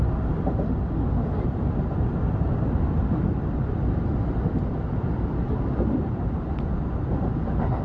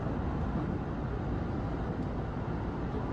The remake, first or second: first